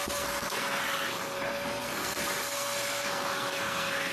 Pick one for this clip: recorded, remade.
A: remade